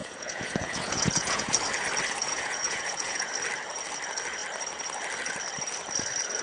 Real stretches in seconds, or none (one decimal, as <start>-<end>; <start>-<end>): 1.5-2.2; 3.3-6.4